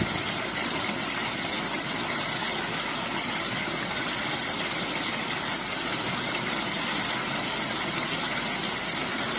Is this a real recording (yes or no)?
yes